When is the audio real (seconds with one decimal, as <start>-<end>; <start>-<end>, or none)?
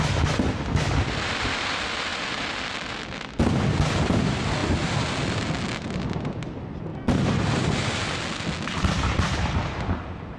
0.0-2.1; 2.7-10.4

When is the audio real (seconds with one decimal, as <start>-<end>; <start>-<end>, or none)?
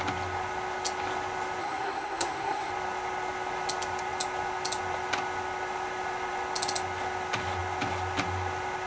0.0-1.6; 2.7-8.9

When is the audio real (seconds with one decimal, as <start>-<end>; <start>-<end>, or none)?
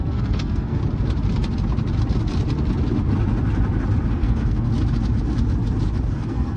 0.8-4.1; 4.7-6.1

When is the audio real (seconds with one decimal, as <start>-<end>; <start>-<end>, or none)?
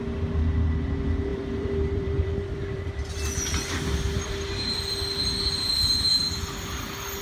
0.0-1.3; 2.9-7.2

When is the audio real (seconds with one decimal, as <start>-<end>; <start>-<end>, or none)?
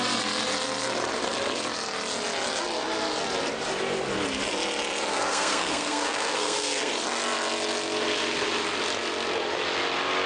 0.0-5.1; 6.9-10.3